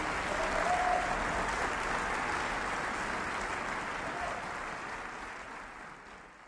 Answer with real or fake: real